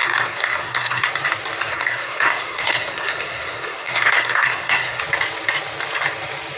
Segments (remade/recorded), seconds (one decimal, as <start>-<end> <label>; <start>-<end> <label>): 0.0-1.1 remade; 1.1-1.7 recorded; 1.7-5.0 remade; 5.0-6.6 recorded